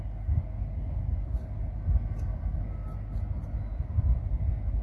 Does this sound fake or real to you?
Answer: real